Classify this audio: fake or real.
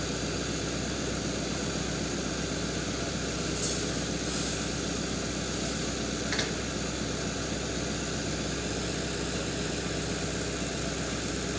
real